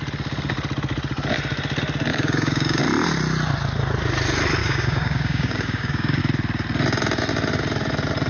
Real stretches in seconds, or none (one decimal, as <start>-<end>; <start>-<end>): 0.0-2.1; 2.8-4.6; 6.2-8.3